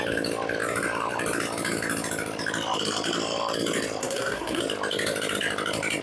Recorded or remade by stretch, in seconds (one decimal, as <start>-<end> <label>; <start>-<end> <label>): 0.0-4.0 recorded; 4.0-4.6 remade; 4.6-6.0 recorded